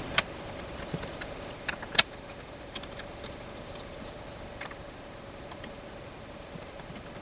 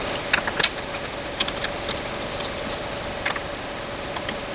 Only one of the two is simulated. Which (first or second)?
first